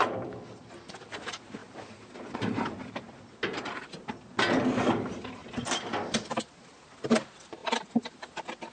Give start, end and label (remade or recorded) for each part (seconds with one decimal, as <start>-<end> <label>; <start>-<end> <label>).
0.0-1.6 recorded; 1.6-2.9 remade; 2.9-5.4 recorded; 5.4-6.1 remade; 6.1-7.6 recorded; 7.6-8.7 remade